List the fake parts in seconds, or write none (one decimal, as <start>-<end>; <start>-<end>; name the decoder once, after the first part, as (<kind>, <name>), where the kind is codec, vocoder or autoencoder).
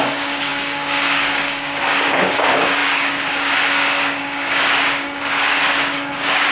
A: 0.0-6.5 (codec, DAC)